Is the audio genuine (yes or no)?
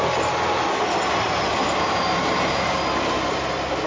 yes